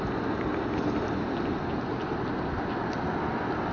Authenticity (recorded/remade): recorded